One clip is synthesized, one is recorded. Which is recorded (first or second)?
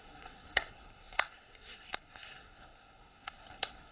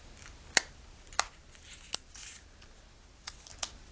second